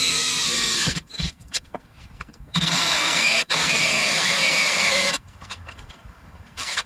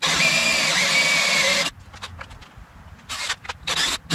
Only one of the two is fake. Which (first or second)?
first